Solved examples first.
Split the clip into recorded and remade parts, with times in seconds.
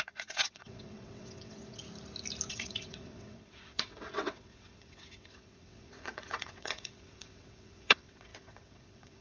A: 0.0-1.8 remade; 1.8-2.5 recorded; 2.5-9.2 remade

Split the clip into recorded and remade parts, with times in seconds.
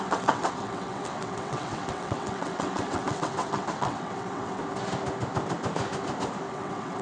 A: 0.0-4.6 remade; 4.6-6.5 recorded; 6.5-7.0 remade